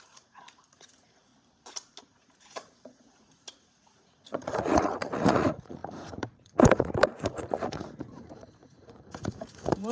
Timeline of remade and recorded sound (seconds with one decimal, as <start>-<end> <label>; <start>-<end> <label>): 0.0-1.3 remade; 1.3-2.0 recorded; 2.0-9.9 remade

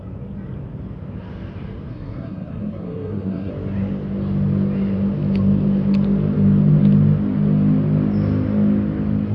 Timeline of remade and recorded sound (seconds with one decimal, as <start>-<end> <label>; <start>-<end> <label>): 0.0-1.9 recorded; 1.9-3.5 remade; 3.5-9.3 recorded

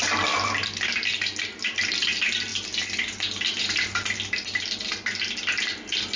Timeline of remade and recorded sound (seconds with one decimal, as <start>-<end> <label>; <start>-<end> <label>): 0.0-6.2 recorded

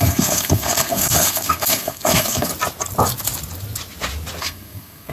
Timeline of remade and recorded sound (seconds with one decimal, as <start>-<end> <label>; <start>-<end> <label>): 0.0-2.5 remade; 2.5-4.4 recorded; 4.4-5.1 remade

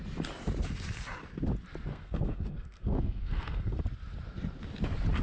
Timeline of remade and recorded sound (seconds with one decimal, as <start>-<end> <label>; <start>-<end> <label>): 0.0-1.9 recorded; 1.9-3.8 remade; 3.8-5.2 recorded

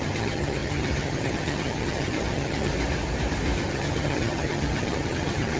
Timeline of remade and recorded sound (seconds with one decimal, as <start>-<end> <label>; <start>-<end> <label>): 0.0-2.7 remade; 2.7-3.7 recorded; 3.7-5.6 remade